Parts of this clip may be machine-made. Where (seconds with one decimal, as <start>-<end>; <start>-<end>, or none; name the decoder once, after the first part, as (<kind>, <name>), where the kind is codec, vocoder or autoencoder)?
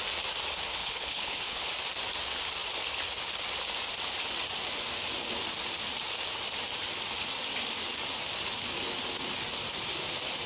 0.8-1.6 (codec, HILCodec)